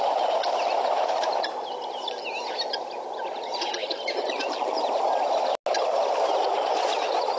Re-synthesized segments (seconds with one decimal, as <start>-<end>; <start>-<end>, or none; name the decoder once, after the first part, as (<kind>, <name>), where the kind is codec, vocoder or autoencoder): 3.8-5.0 (vocoder, BigVGAN v2)